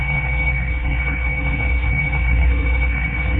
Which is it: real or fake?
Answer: fake